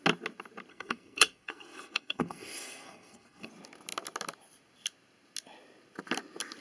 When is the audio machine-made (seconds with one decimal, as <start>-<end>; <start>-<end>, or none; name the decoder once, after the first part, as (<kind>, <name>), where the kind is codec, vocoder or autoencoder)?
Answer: 0.7-3.5 (codec, SNAC)